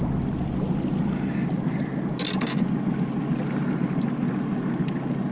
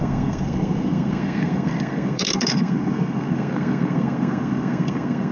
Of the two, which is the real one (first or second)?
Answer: first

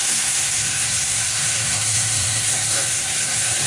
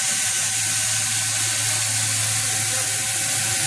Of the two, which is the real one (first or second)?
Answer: second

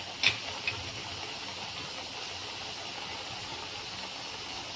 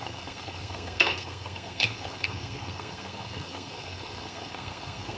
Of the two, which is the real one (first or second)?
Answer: first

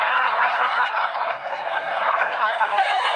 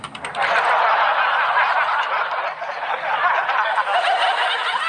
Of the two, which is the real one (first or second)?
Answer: second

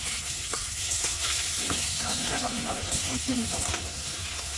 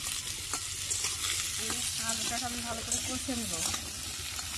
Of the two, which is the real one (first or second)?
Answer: second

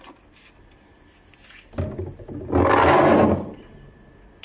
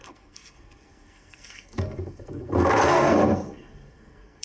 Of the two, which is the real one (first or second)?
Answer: first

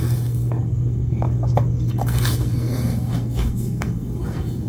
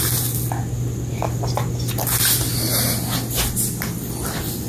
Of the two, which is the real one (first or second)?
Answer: second